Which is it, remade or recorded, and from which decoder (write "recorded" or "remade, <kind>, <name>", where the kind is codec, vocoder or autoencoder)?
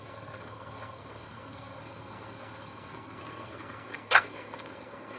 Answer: remade, codec, SNAC